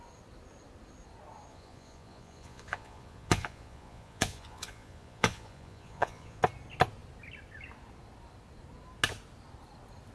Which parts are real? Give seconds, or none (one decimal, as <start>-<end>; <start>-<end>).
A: 0.0-1.5; 6.4-10.1